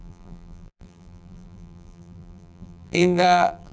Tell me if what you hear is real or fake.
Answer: fake